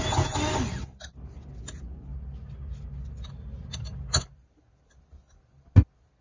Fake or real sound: real